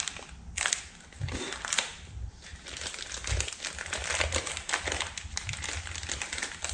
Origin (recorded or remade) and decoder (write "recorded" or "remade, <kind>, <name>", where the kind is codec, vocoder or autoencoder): recorded